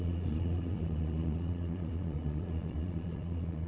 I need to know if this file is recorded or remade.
remade